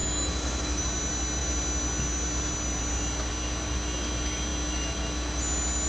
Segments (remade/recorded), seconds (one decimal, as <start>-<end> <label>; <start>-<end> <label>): 0.0-0.8 remade; 0.8-5.9 recorded